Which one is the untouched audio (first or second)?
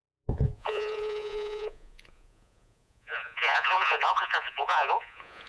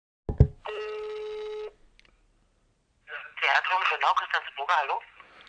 second